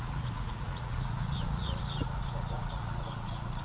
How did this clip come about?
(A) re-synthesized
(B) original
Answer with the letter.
A